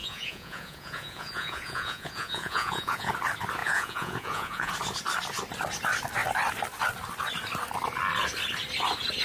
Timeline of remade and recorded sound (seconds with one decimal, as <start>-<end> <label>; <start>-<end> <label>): 0.0-3.1 remade; 3.1-3.6 recorded; 3.6-4.7 remade; 4.7-9.2 recorded